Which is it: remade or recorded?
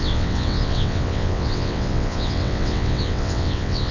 remade